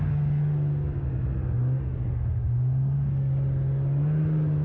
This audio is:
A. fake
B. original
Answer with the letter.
B